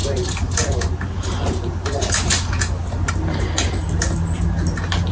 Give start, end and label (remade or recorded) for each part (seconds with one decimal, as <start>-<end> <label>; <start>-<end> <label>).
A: 0.0-5.1 recorded

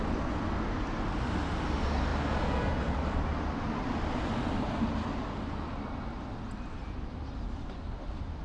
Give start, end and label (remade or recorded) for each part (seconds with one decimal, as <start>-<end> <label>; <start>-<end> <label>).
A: 0.0-8.4 recorded

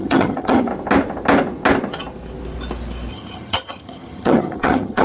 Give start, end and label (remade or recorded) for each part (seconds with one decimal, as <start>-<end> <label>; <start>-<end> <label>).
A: 0.0-0.7 remade; 0.7-3.1 recorded; 3.1-5.0 remade

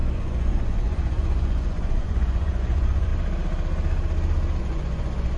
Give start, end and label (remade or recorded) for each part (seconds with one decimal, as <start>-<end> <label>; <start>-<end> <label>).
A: 0.0-3.1 remade; 3.1-4.6 recorded; 4.6-5.4 remade

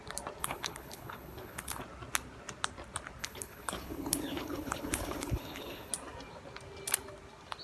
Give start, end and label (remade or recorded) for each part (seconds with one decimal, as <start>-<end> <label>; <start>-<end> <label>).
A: 0.0-0.4 recorded; 0.4-1.8 remade; 1.8-3.2 recorded; 3.2-5.9 remade; 5.9-7.6 recorded

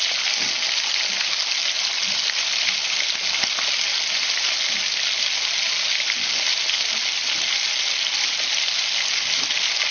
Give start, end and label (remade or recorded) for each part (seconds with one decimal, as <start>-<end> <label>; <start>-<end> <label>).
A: 0.0-9.9 recorded